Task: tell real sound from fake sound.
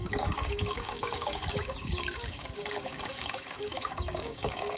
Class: fake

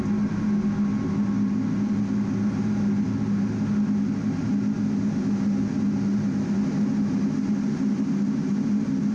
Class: real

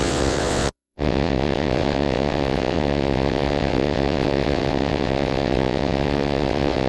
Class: fake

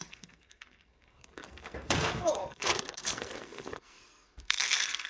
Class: fake